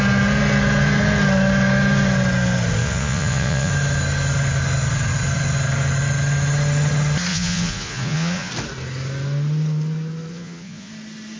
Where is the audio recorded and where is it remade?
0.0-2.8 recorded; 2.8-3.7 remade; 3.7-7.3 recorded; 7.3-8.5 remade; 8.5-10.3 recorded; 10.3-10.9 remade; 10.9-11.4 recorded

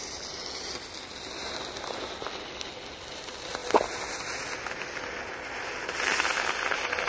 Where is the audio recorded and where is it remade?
0.0-7.1 recorded